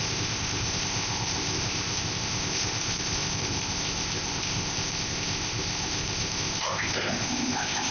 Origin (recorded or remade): remade